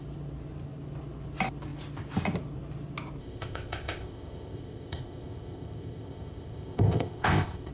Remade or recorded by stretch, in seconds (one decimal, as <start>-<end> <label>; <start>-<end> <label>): 0.0-3.2 recorded; 3.2-7.7 remade